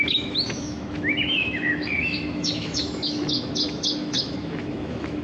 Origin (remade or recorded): remade